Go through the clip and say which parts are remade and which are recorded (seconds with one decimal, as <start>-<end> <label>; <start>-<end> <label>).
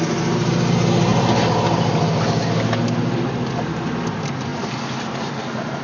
0.0-5.8 recorded